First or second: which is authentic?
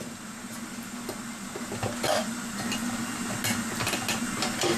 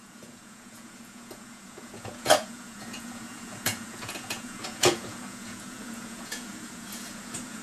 first